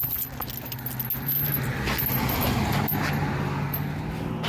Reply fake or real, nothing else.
real